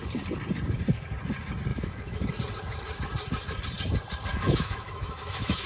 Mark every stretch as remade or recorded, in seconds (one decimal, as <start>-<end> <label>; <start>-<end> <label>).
0.0-1.7 recorded; 1.7-2.3 remade; 2.3-4.3 recorded; 4.3-5.7 remade